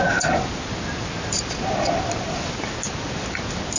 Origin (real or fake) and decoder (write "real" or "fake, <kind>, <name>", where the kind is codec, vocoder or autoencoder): real